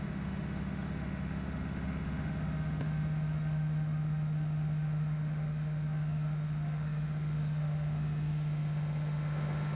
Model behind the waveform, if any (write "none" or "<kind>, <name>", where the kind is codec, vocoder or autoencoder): autoencoder, DAC-VAE